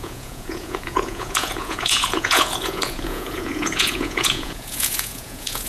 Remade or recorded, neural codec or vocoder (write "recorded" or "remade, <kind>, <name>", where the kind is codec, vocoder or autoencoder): remade, vocoder, Vocos